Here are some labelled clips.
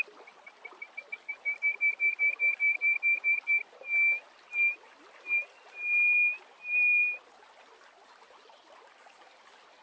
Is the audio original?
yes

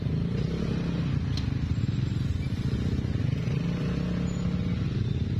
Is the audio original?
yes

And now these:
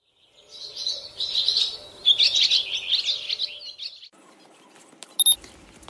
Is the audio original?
yes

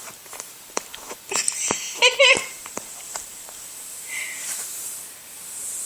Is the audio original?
no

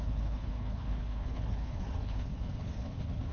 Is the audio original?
no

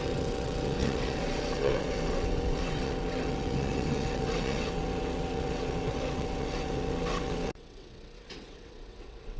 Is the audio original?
no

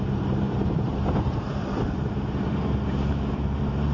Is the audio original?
no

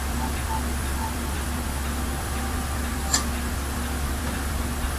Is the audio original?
no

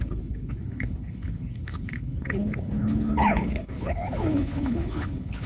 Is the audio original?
no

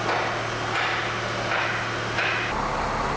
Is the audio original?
yes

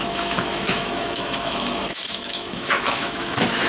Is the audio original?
no